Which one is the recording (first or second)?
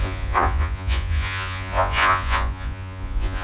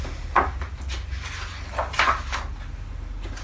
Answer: second